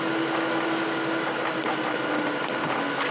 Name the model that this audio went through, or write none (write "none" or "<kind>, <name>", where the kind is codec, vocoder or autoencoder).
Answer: none